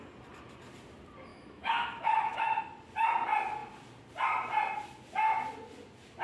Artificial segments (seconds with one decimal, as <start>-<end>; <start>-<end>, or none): 1.3-2.6

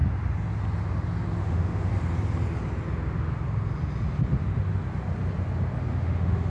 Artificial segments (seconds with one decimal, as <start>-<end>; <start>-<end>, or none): 1.4-1.9; 5.8-6.5

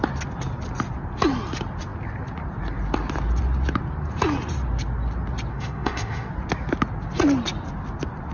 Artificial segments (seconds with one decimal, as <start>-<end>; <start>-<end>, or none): 5.5-6.3

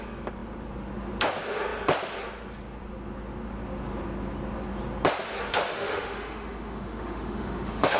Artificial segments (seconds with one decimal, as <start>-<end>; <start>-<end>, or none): 5.5-8.0

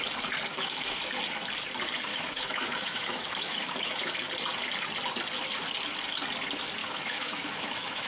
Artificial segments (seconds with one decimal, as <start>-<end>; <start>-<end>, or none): 0.5-1.0; 2.1-4.1; 6.8-8.1